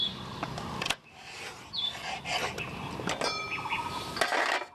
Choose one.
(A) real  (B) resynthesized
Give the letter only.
A